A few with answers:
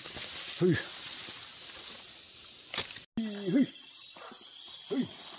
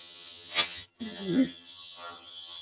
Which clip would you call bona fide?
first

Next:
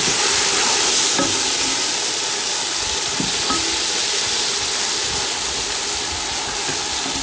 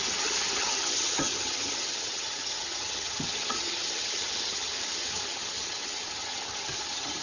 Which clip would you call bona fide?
first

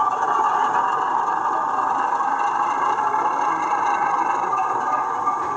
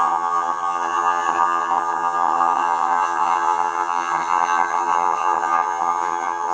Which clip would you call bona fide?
first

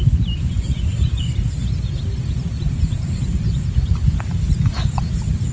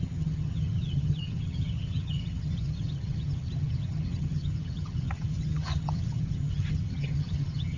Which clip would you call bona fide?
first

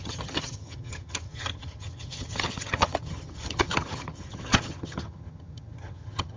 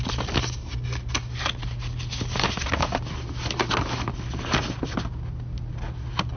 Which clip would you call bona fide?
second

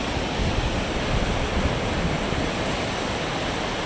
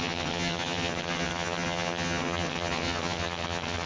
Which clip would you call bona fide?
first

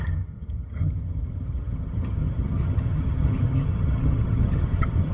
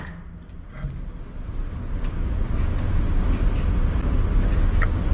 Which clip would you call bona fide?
second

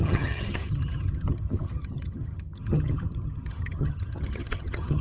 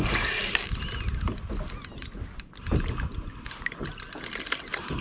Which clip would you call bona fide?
second